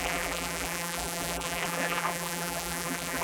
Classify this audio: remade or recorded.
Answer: remade